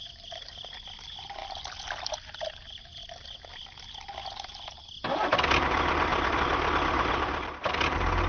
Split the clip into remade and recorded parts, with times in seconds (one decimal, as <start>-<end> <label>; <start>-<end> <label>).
0.0-1.4 recorded; 1.4-2.8 remade; 2.8-6.1 recorded; 6.1-7.7 remade; 7.7-8.3 recorded